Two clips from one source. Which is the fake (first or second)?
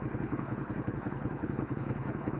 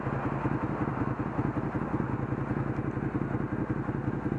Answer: first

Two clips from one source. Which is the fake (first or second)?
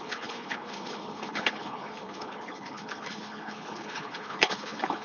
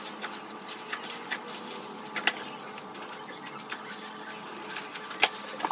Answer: first